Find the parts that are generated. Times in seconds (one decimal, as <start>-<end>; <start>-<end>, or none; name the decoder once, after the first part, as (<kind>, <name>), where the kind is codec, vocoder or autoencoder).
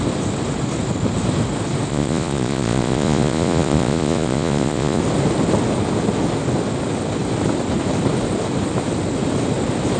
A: 1.9-5.0 (vocoder, Vocos)